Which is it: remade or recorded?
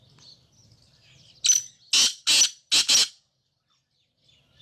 recorded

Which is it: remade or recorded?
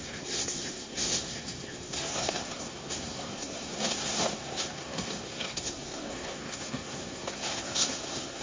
remade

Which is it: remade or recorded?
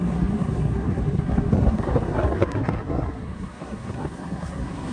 remade